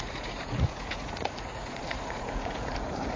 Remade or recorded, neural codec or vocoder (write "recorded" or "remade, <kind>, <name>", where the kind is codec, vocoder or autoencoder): remade, vocoder, Vocos